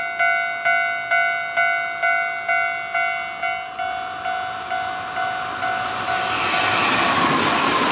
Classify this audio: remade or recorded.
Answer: recorded